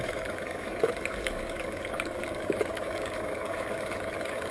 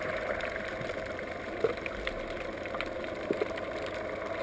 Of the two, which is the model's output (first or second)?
first